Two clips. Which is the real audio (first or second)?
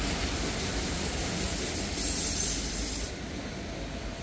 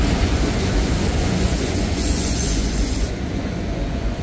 first